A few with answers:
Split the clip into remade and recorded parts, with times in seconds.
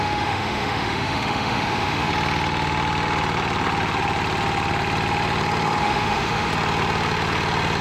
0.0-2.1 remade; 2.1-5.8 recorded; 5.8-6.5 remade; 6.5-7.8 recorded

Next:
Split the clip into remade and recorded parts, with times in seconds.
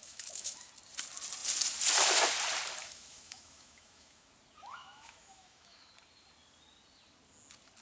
0.0-0.7 remade; 0.7-2.8 recorded; 2.8-4.3 remade; 4.3-4.7 recorded; 4.7-5.9 remade; 5.9-7.8 recorded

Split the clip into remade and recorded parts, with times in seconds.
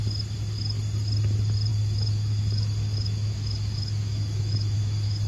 0.0-1.7 recorded; 1.7-5.3 remade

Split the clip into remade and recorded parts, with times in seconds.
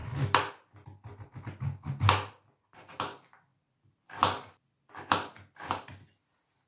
0.0-6.7 recorded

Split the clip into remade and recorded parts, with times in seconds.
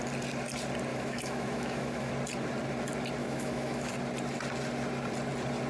0.0-0.9 recorded; 0.9-2.1 remade; 2.1-3.2 recorded; 3.2-3.9 remade; 3.9-5.7 recorded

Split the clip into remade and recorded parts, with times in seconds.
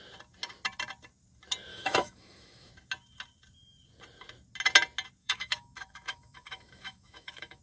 0.0-1.7 recorded; 1.7-2.7 remade; 2.7-5.2 recorded; 5.2-7.6 remade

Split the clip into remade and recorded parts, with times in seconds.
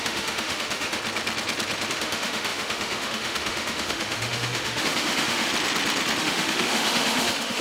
0.0-1.0 remade; 1.0-1.9 recorded; 1.9-5.5 remade; 5.5-6.2 recorded; 6.2-7.6 remade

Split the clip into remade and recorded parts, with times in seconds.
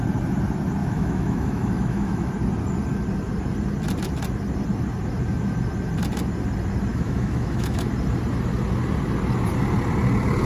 0.0-0.8 recorded; 0.8-2.3 remade; 2.3-6.9 recorded; 6.9-7.9 remade; 7.9-10.5 recorded